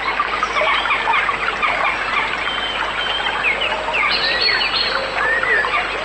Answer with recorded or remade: recorded